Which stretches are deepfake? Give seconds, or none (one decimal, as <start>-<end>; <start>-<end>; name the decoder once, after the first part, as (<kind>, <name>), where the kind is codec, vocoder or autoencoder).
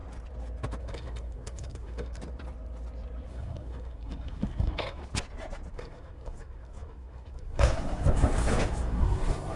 0.8-2.2 (codec, SNAC); 3.3-5.0; 5.7-9.6